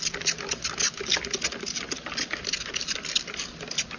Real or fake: real